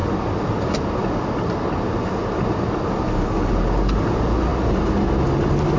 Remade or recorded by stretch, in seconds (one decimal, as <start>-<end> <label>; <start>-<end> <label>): 0.0-5.8 recorded